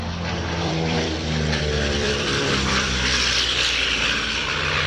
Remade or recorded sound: remade